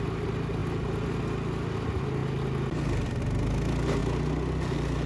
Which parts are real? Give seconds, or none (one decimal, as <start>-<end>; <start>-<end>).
0.0-5.1